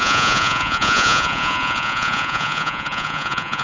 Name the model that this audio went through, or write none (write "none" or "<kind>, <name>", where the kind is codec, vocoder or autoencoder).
vocoder, Vocos